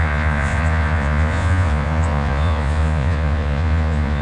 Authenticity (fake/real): fake